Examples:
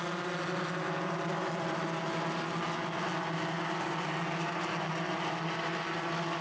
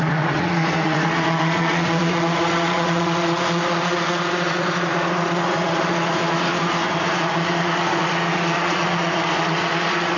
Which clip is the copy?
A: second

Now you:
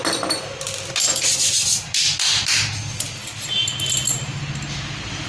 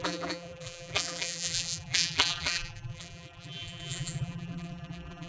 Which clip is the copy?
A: second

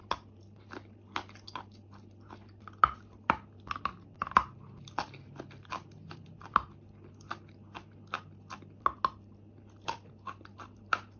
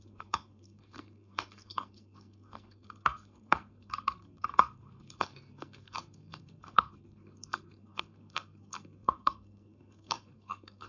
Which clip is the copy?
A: second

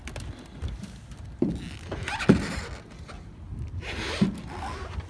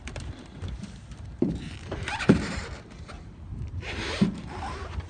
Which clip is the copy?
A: second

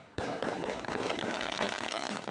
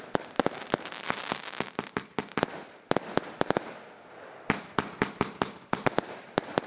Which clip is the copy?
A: first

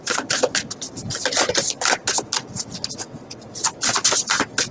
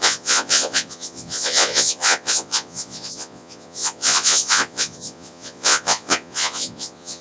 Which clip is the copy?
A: second